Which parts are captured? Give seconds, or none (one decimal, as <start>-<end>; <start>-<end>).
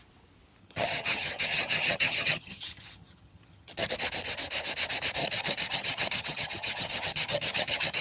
0.0-0.6; 3.9-5.2